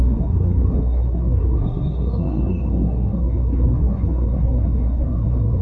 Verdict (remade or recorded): remade